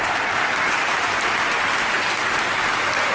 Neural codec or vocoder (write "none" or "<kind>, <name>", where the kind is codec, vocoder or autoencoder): none